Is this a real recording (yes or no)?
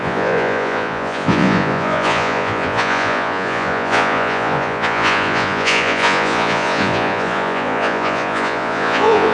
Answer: no